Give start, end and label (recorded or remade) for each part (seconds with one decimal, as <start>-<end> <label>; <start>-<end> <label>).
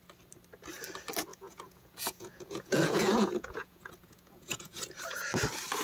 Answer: 0.0-1.3 recorded; 1.3-4.8 remade; 4.8-5.8 recorded